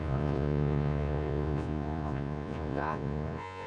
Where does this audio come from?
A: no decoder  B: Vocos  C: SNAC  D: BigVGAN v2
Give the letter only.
B